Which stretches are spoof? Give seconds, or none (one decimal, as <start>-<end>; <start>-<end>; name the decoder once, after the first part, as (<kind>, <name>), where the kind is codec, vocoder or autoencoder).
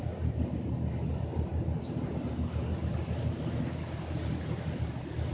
none